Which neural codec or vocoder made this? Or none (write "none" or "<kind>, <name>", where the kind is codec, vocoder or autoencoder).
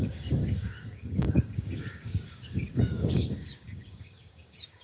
codec, DAC